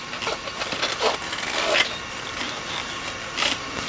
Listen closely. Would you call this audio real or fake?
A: real